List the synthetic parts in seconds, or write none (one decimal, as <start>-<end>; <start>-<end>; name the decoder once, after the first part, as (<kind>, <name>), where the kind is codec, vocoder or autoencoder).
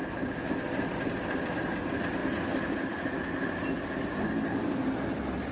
none